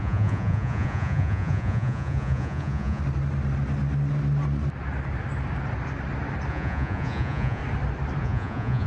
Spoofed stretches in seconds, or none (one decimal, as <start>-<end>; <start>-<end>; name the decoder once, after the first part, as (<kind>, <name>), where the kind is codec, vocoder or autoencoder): 0.0-3.0 (vocoder, Vocos); 6.5-7.6; 8.2-8.9